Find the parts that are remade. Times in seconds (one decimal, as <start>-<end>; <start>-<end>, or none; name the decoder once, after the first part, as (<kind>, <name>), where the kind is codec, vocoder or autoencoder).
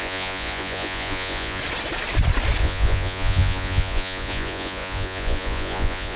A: 0.0-1.6 (vocoder, Vocos); 2.6-6.2